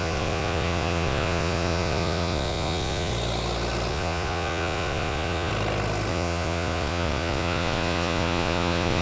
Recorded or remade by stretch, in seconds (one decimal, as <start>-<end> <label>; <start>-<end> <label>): 0.0-3.1 remade; 3.1-3.9 recorded; 3.9-5.5 remade; 5.5-6.1 recorded; 6.1-9.0 remade